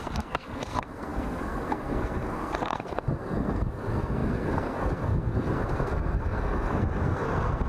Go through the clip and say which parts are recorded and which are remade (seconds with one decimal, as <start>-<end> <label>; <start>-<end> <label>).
0.0-7.7 remade